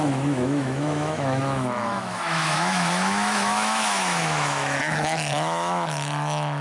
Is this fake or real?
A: fake